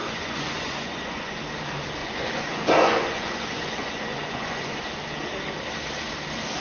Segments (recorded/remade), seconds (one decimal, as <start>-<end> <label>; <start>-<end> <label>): 0.0-1.4 remade; 1.4-2.0 recorded; 2.0-4.8 remade; 4.8-6.6 recorded